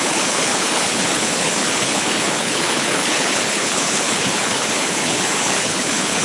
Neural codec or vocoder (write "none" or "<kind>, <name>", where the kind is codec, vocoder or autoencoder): codec, HILCodec